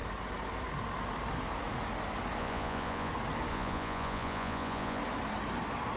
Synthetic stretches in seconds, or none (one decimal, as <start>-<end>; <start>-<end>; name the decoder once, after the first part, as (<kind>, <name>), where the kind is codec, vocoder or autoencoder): 2.4-3.1 (vocoder, Vocos); 3.5-5.0